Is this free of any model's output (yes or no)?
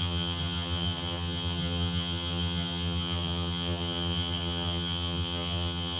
no